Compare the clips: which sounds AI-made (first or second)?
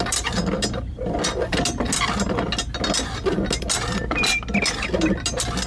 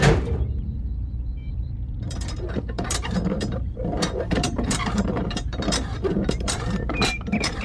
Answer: second